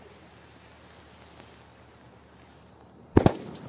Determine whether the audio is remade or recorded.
recorded